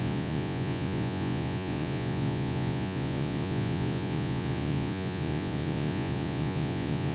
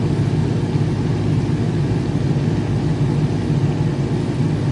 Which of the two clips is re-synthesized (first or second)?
first